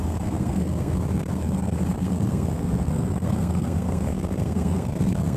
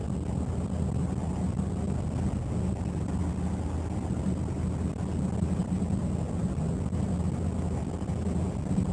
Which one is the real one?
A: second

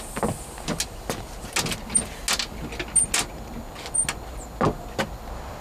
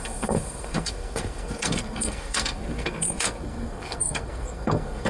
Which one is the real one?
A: first